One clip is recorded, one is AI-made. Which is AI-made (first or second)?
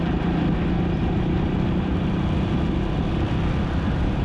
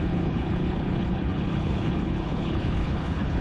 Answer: second